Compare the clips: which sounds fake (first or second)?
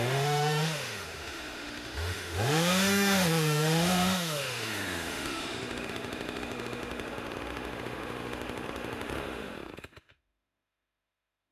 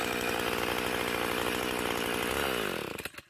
first